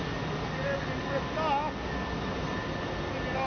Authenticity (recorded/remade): recorded